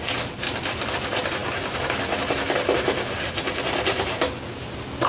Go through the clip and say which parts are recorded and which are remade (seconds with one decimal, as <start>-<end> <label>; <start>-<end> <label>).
0.0-5.1 recorded